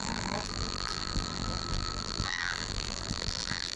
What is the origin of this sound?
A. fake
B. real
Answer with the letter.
A